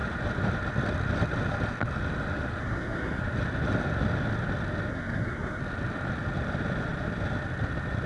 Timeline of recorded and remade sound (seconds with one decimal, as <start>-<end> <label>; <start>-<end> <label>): 0.0-2.6 recorded; 2.6-3.2 remade; 3.2-4.9 recorded; 4.9-5.6 remade; 5.6-8.1 recorded